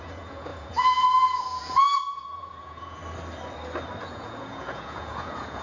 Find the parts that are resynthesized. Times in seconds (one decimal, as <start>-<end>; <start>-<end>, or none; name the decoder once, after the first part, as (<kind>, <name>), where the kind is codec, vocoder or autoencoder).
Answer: 0.0-3.0 (vocoder, Vocos); 4.0-5.6